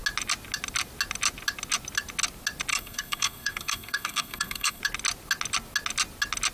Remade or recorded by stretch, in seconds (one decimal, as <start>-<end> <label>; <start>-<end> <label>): 0.0-2.7 recorded; 2.7-4.8 remade; 4.8-6.5 recorded